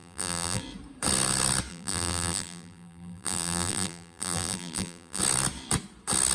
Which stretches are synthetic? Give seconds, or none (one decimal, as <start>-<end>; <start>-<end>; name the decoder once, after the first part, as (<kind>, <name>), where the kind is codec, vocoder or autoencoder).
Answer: 0.0-0.6 (vocoder, BigVGAN v2); 1.7-5.2